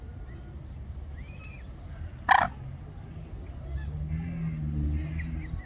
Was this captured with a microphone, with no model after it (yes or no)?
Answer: yes